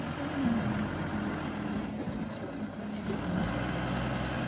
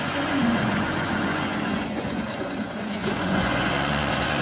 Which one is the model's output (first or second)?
second